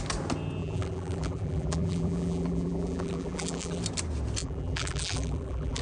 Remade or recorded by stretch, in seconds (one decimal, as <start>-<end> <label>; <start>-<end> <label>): 0.0-0.6 recorded; 0.6-3.8 remade; 3.8-4.4 recorded; 4.4-5.8 remade